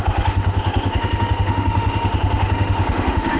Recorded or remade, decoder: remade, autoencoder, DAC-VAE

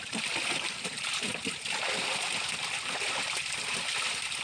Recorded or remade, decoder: recorded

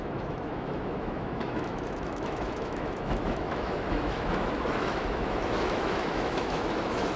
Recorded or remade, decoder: remade, autoencoder, DAC-VAE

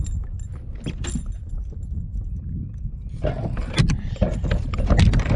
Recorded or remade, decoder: recorded